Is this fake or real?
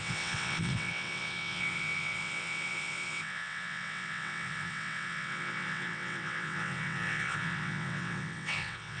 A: fake